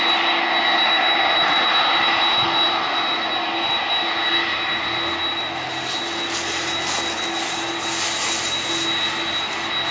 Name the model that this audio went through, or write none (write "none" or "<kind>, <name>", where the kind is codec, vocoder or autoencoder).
none